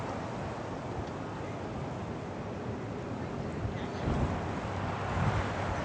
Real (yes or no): yes